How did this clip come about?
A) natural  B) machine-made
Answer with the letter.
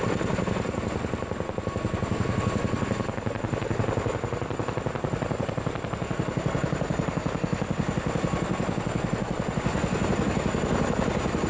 A